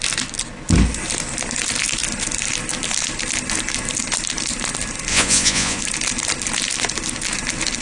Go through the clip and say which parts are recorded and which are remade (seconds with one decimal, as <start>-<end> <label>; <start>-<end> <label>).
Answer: 0.0-5.1 recorded; 5.1-5.8 remade; 5.8-7.8 recorded